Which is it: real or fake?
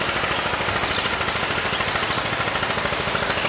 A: real